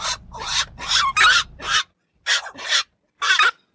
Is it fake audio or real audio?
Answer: real